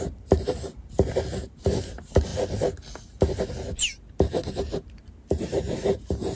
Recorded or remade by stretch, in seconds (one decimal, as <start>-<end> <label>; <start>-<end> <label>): 0.0-2.3 remade; 2.3-5.0 recorded; 5.0-6.4 remade